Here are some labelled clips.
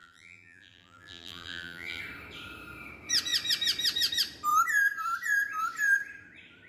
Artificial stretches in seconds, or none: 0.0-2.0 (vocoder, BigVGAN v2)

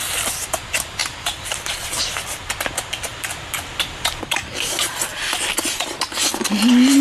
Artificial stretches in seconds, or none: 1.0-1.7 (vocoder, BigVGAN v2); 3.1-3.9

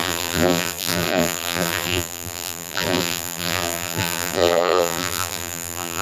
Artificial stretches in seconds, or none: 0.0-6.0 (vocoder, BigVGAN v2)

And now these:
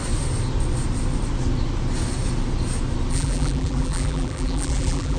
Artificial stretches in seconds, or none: 3.1-5.2 (vocoder, BigVGAN v2)

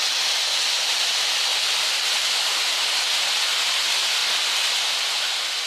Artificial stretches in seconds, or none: none